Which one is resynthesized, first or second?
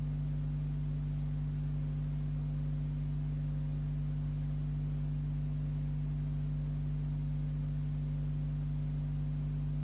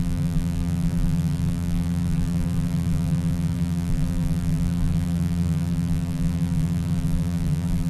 second